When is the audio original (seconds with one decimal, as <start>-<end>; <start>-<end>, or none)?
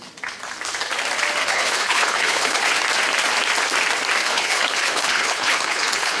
0.0-1.4; 2.7-4.2